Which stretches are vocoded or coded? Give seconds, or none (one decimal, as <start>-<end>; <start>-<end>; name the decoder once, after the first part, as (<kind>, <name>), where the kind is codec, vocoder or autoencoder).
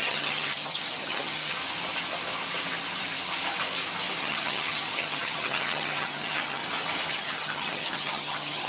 0.0-1.6 (vocoder, HiFi-GAN); 4.2-6.6; 7.1-8.7